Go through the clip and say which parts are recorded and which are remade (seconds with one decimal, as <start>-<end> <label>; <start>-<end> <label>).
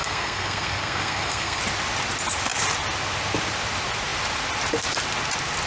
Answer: 0.0-1.6 remade; 1.6-5.7 recorded